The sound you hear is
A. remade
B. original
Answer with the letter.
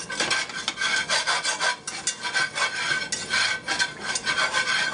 B